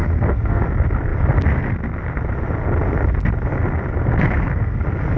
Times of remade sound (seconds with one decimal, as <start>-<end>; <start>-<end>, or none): 0.0-0.6; 4.2-4.8